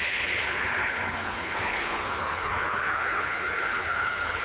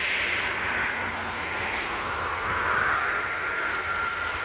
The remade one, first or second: first